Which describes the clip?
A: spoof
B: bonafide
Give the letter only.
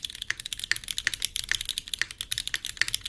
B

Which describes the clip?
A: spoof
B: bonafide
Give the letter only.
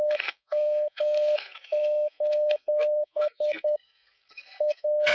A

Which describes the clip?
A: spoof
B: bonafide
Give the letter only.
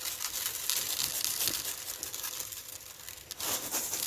B